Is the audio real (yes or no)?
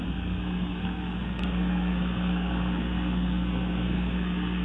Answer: no